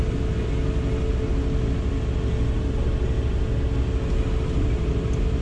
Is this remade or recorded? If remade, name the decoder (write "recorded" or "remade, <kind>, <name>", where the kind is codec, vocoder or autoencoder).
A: recorded